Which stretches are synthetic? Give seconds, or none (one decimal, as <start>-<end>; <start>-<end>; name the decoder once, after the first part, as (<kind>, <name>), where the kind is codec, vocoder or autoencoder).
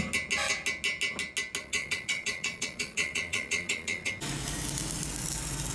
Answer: 1.6-4.1 (vocoder, Vocos)